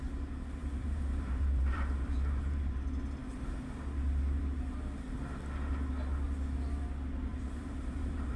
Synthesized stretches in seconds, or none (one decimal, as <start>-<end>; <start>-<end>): 0.6-2.8; 7.3-8.4